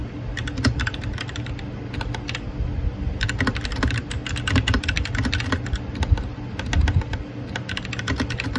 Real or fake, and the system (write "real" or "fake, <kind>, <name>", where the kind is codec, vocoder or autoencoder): real